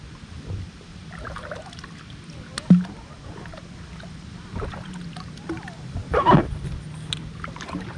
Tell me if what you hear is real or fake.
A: real